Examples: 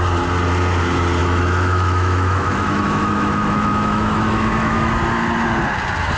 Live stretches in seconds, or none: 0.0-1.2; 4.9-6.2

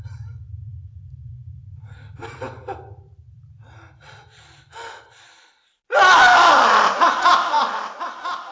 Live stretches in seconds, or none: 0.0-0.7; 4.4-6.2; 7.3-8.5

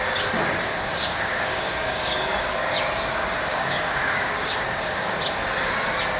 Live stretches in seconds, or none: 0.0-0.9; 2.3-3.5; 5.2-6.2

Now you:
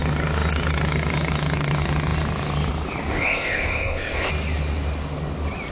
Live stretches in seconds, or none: 0.0-3.1; 4.3-5.7

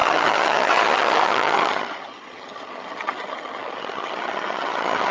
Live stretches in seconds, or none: none